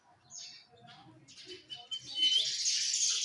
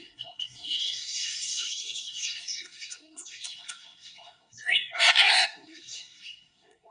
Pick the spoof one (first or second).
second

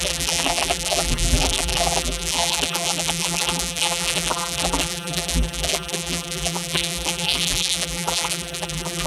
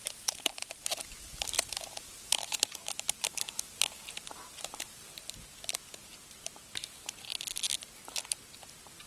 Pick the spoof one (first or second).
first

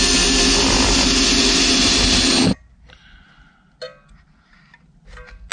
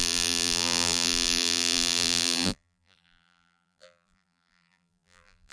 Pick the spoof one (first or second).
second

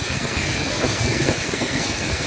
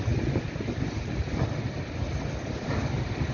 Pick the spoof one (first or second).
first